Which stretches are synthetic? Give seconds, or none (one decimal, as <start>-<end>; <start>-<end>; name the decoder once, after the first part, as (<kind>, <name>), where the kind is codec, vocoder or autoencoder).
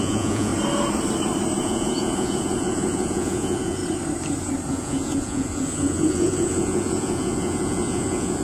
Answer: 0.0-0.5 (vocoder, Vocos); 1.6-3.8; 4.7-8.4